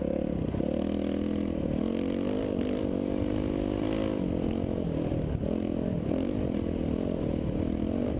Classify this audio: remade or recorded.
recorded